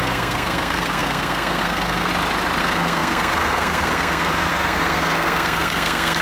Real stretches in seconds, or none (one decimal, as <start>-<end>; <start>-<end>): 2.1-2.6